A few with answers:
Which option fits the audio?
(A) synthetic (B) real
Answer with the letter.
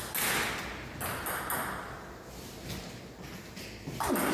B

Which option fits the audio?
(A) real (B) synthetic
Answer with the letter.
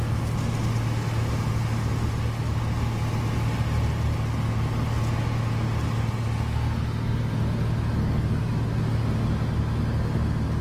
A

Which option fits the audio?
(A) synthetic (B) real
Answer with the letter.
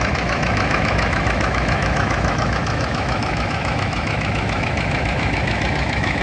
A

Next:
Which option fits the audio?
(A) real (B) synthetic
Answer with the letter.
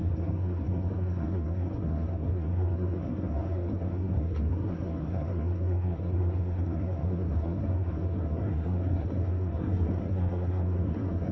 B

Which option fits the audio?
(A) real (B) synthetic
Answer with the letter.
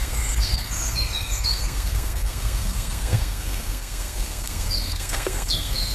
B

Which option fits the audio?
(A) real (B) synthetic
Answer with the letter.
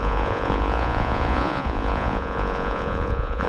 B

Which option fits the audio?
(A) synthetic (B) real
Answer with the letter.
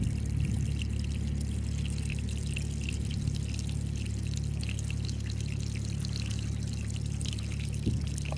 B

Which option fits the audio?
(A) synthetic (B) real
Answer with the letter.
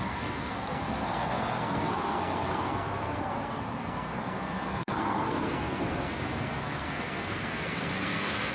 A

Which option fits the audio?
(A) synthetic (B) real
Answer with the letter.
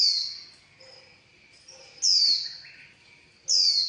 B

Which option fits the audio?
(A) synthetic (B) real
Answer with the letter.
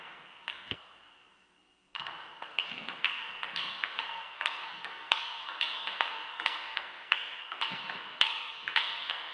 A